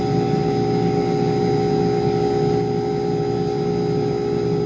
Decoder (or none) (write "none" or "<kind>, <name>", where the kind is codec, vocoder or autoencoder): none